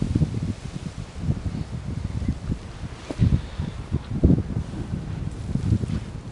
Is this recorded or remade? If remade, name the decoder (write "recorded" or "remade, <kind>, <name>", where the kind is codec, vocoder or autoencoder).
recorded